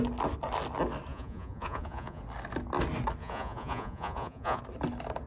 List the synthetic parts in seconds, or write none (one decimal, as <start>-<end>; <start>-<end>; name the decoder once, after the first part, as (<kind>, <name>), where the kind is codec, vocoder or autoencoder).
1.1-2.2 (vocoder, Vocos); 3.2-4.6

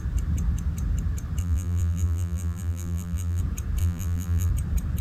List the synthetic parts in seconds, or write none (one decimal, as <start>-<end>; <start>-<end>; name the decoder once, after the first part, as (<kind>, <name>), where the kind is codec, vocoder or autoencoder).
1.4-3.4 (vocoder, BigVGAN v2); 3.8-4.5

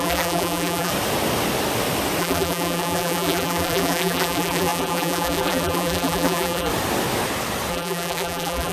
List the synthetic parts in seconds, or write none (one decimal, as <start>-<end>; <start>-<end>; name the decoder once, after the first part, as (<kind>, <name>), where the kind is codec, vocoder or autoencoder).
0.0-0.9 (vocoder, BigVGAN v2); 2.2-6.7; 7.7-8.7

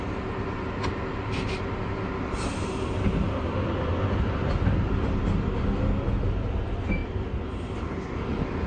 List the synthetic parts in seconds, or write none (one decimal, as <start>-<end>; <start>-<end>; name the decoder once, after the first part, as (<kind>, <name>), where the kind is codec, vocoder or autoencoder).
none

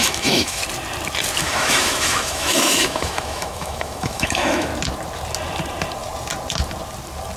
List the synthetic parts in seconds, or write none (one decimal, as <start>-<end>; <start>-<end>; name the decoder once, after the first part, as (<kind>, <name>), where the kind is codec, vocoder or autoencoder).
0.0-0.6 (autoencoder, DAC-VAE); 1.4-4.7

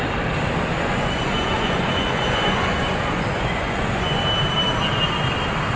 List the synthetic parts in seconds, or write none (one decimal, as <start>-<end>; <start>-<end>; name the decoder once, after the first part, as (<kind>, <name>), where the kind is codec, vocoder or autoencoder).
0.7-4.2 (vocoder, Vocos)